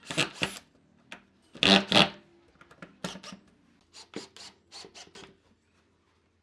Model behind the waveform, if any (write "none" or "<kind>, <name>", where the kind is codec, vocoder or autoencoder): none